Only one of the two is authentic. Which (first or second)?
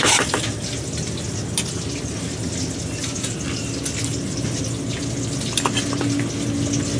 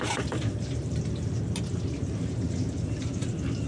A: first